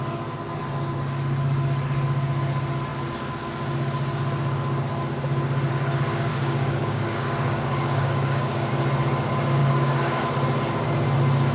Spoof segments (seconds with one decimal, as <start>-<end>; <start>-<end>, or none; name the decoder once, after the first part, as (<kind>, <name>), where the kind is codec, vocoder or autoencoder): 6.3-8.7 (codec, DAC); 9.6-10.2